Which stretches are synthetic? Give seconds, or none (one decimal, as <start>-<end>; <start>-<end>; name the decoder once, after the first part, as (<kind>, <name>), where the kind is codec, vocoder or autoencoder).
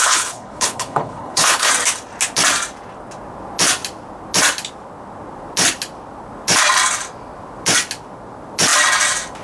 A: 0.0-1.7 (codec, HILCodec)